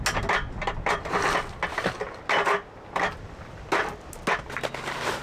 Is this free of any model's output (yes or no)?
yes